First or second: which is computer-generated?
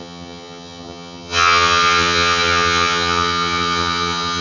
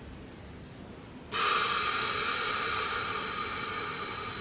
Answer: first